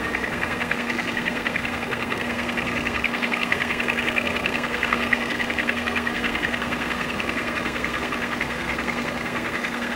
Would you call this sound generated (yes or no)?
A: yes